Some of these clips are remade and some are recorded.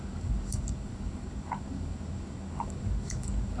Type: remade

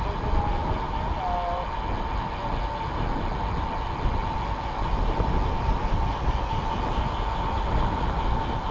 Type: recorded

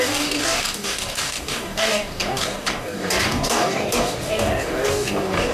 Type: remade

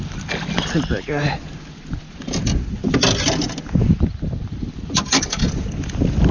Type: recorded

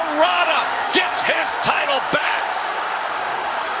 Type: remade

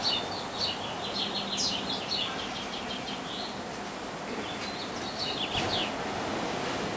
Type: recorded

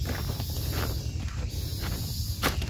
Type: recorded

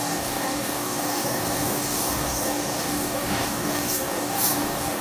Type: remade